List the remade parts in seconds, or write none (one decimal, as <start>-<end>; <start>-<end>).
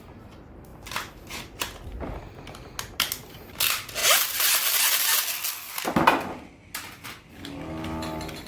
none